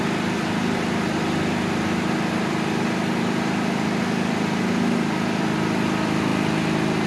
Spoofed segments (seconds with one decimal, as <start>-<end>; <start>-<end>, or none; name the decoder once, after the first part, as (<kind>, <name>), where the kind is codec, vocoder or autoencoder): none